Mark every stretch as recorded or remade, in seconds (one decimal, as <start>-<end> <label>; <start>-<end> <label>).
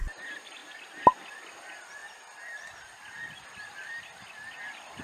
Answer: 0.0-5.0 recorded